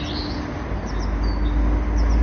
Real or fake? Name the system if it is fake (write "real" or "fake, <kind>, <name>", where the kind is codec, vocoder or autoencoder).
real